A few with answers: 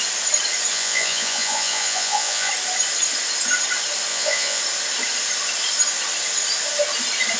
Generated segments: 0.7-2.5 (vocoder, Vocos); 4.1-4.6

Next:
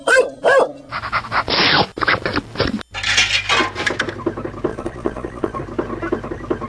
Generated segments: 4.7-5.6 (vocoder, Vocos)

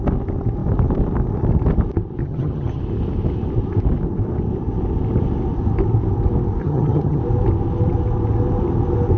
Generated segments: 2.2-2.8 (vocoder, HiFi-GAN); 6.6-7.2

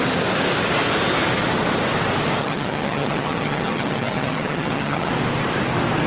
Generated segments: 2.4-5.1 (vocoder, HiFi-GAN)

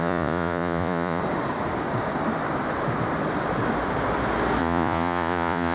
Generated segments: 0.0-1.2 (vocoder, Vocos); 4.6-5.7

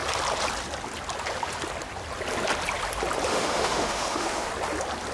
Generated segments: 3.3-4.5 (autoencoder, DAC-VAE)